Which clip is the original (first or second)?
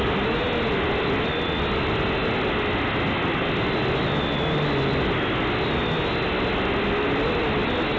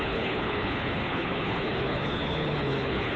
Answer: first